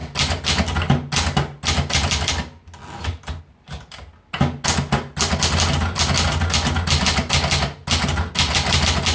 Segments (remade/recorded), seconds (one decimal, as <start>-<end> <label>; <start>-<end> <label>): 0.0-9.1 recorded